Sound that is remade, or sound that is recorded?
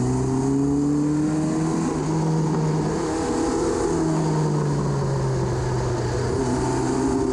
recorded